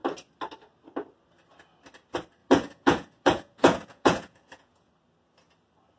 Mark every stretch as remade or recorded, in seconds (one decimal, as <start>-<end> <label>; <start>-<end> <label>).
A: 0.0-2.4 recorded; 2.4-4.9 remade; 4.9-6.0 recorded